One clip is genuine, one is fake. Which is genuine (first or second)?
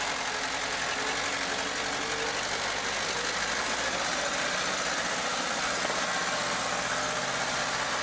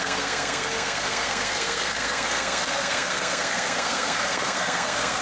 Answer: first